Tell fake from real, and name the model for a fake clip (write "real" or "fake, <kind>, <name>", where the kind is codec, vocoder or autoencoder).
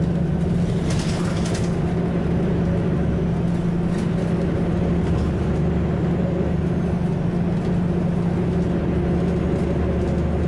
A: real